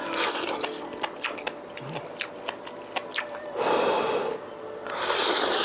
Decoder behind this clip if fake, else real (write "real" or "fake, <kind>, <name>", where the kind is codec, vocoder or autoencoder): real